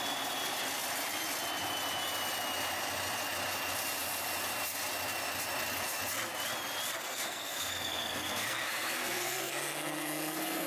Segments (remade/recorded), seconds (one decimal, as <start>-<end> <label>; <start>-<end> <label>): 0.0-6.9 recorded; 6.9-10.7 remade